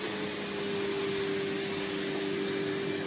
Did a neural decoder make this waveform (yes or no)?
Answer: no